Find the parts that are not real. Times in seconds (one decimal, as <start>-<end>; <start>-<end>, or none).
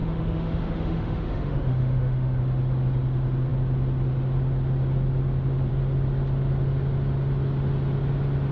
0.0-2.4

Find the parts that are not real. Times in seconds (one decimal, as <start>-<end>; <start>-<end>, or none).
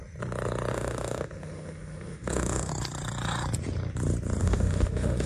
0.7-2.7; 4.4-5.3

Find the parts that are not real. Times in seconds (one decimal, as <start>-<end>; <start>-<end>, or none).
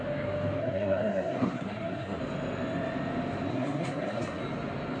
0.6-2.2; 3.5-4.4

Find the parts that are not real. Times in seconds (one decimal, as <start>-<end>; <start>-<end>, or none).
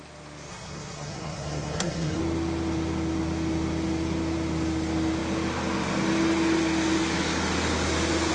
0.5-2.2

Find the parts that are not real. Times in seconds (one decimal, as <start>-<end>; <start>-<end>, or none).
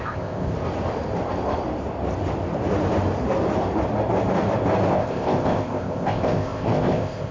0.0-0.5; 4.9-7.3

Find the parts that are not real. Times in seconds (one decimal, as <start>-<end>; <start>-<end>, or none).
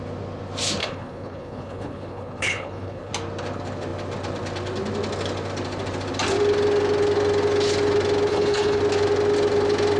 0.8-3.1; 8.3-8.8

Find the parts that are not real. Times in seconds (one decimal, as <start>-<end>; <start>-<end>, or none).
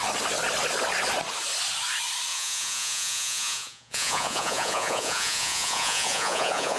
2.3-6.8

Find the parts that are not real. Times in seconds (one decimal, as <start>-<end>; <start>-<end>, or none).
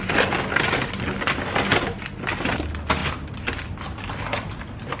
none